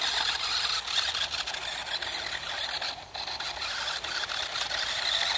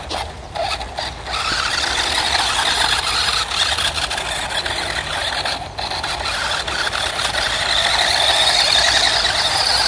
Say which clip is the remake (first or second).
first